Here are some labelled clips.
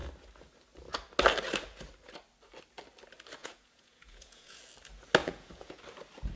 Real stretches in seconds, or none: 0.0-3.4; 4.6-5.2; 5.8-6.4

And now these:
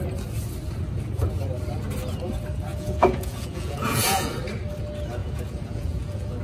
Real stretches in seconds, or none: 0.0-2.7; 4.3-5.2

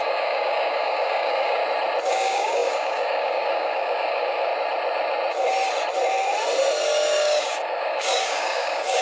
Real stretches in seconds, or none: 1.6-2.1; 4.5-6.8

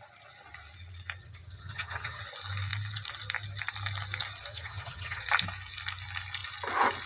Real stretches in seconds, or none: 0.0-1.2; 2.2-4.5; 5.2-7.1

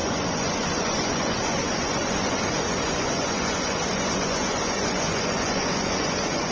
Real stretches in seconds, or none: none